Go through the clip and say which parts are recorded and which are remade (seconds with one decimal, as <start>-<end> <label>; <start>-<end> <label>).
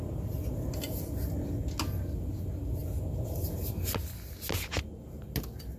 0.0-5.8 recorded